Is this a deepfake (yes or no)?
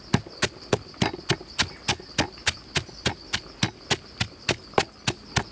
no